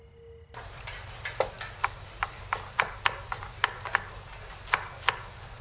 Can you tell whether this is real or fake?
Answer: real